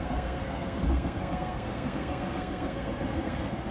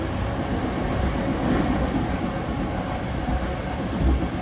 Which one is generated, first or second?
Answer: first